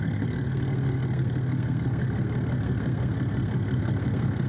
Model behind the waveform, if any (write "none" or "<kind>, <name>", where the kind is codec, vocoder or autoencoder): codec, SNAC